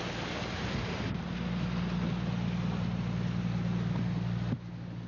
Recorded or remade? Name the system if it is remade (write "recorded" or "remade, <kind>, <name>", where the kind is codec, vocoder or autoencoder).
recorded